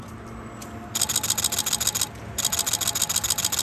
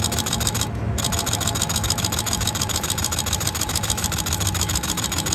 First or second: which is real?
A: first